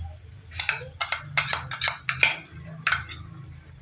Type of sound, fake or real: real